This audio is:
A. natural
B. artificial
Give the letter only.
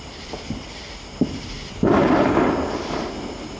A